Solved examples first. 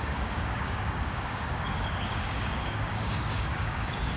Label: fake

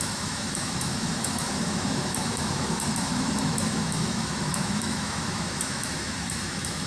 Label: fake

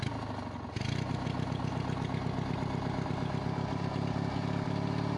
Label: real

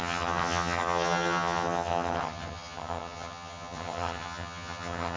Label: fake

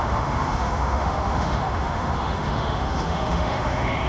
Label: fake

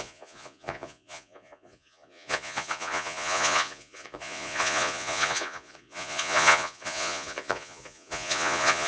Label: fake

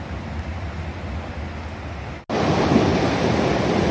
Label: real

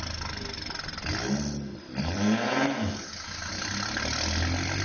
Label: real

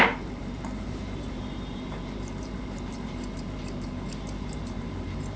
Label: fake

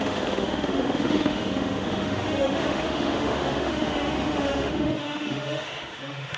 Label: fake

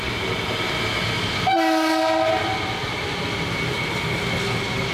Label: real